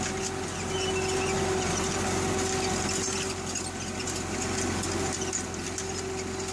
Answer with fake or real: real